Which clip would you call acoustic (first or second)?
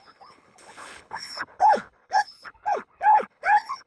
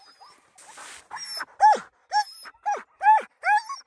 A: second